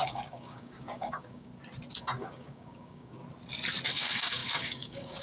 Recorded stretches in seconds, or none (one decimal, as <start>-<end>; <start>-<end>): 1.5-2.0; 3.2-3.9